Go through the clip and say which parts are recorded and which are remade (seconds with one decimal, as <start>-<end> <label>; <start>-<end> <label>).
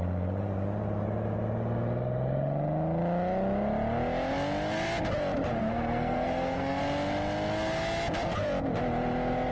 0.0-5.6 recorded; 5.6-6.8 remade; 6.8-9.5 recorded